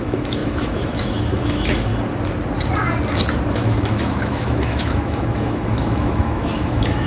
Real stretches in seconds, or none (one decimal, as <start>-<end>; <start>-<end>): 1.9-3.5